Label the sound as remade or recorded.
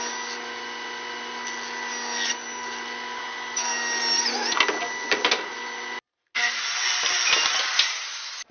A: recorded